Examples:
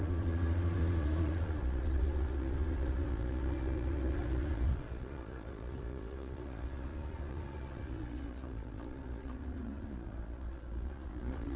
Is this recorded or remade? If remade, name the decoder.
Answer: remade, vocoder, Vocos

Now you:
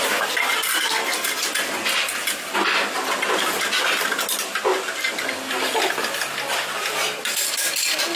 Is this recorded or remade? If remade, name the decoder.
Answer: recorded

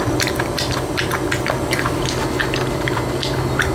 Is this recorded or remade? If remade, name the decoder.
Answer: recorded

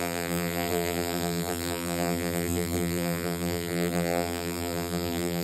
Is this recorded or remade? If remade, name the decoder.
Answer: remade, vocoder, BigVGAN v2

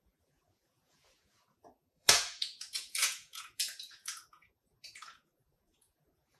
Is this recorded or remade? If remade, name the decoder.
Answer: remade, vocoder, Vocos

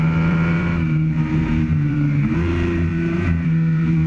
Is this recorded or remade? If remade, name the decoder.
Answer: remade, vocoder, BigVGAN v2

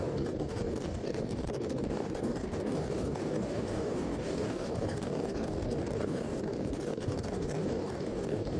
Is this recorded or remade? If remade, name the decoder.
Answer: remade, codec, DAC